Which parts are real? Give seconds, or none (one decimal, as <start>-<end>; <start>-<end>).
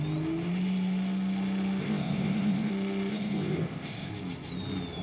0.0-1.8; 2.7-3.1; 4.1-5.0